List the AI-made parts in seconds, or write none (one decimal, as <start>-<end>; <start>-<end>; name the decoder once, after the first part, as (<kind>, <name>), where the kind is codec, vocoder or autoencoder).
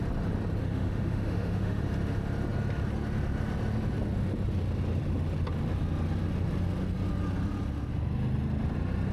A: 0.6-1.8 (autoencoder, DAC-VAE)